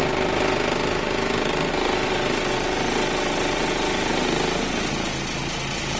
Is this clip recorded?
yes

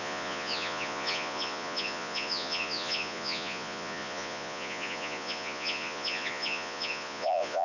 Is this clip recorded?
no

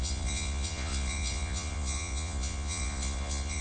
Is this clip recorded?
no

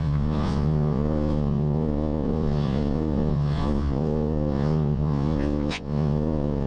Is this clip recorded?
no